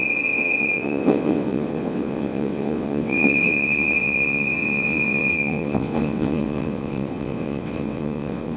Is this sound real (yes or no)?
no